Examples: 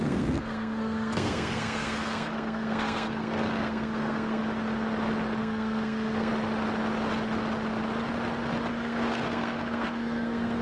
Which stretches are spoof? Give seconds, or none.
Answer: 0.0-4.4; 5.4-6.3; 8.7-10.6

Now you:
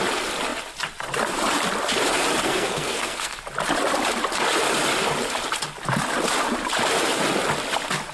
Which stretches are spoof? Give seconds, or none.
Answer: 2.4-3.4

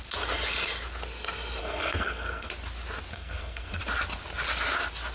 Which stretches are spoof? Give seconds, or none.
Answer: 1.6-2.5; 3.1-3.8

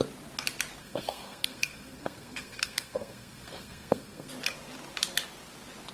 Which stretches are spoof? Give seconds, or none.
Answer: 0.8-4.3

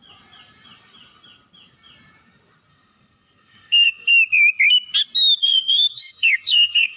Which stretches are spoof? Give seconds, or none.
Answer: 2.7-4.1; 5.4-7.0

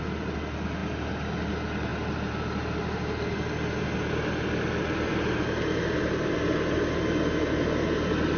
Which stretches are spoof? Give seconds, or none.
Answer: none

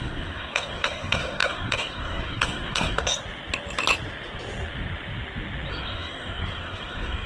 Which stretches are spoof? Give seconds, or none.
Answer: 0.0-3.2; 5.7-7.3

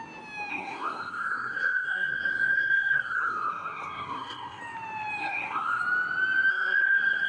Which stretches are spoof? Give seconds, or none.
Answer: 0.5-4.6; 5.2-5.8; 6.5-7.3